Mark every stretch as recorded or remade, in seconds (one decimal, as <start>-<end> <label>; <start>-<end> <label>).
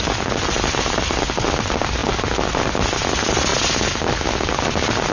0.0-5.1 recorded